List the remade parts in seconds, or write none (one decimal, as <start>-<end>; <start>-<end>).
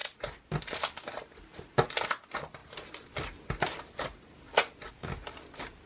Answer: none